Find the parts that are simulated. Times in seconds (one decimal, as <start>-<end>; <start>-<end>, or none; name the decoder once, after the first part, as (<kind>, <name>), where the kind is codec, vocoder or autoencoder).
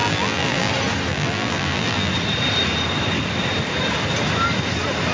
0.0-0.7 (vocoder, BigVGAN v2); 1.1-2.1